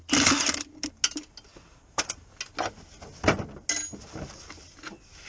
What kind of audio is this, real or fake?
real